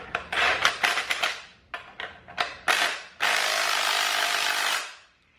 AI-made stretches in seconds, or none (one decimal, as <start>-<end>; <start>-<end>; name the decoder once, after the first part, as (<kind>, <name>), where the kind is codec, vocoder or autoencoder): none